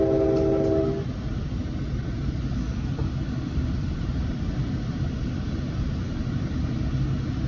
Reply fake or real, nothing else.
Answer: real